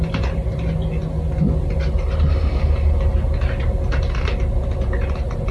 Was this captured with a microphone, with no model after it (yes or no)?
yes